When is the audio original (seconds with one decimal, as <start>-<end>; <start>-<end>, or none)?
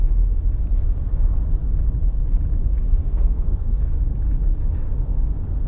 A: 0.0-3.0; 3.9-5.7